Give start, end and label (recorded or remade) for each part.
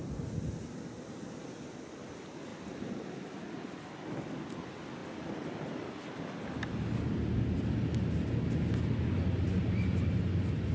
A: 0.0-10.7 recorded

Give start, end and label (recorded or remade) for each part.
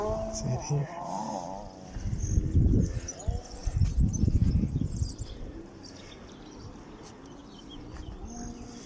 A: 0.0-0.8 recorded; 0.8-1.3 remade; 1.3-3.6 recorded; 3.6-6.0 remade; 6.0-7.4 recorded; 7.4-8.0 remade; 8.0-8.9 recorded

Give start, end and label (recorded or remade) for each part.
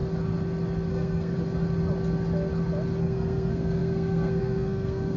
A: 0.0-0.9 recorded; 0.9-1.3 remade; 1.3-3.0 recorded; 3.0-5.2 remade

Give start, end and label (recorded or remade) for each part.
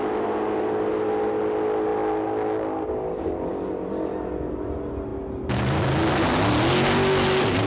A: 0.0-7.7 recorded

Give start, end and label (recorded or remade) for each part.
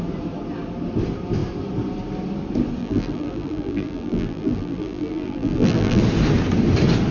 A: 0.0-2.8 recorded; 2.8-6.0 remade; 6.0-7.1 recorded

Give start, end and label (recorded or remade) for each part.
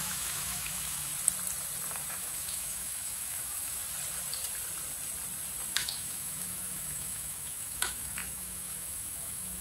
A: 0.0-1.1 remade; 1.1-2.1 recorded; 2.1-3.8 remade; 3.8-5.7 recorded; 5.7-9.6 remade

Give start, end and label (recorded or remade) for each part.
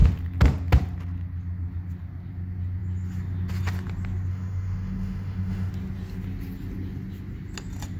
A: 0.0-4.3 recorded; 4.3-5.7 remade; 5.7-8.0 recorded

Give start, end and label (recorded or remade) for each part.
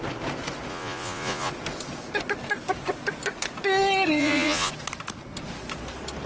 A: 0.0-0.7 recorded; 0.7-1.5 remade; 1.5-4.2 recorded; 4.2-4.7 remade; 4.7-6.3 recorded